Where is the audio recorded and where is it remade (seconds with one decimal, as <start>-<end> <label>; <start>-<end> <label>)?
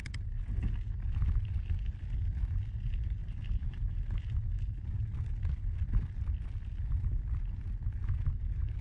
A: 0.0-3.2 recorded; 3.2-4.2 remade; 4.2-8.8 recorded